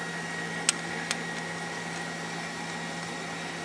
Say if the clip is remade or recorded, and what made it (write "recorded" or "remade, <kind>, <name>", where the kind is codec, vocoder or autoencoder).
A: recorded